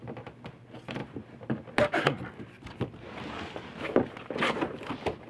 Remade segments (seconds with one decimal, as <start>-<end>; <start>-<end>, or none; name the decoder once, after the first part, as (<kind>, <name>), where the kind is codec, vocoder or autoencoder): none